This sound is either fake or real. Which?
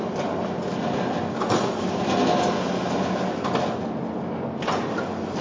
real